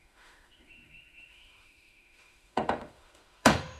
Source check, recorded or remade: remade